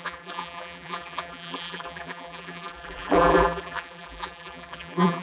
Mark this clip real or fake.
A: fake